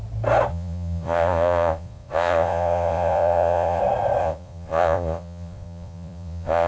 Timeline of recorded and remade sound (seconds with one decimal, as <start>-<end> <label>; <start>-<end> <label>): 0.0-0.5 recorded; 0.5-3.8 remade; 3.8-4.2 recorded; 4.2-6.7 remade